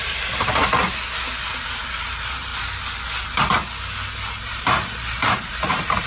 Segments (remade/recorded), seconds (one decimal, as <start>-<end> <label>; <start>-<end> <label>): 0.0-0.6 remade; 0.6-1.6 recorded; 1.6-2.5 remade; 2.5-5.2 recorded; 5.2-6.1 remade